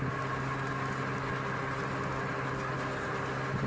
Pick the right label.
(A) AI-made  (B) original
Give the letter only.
B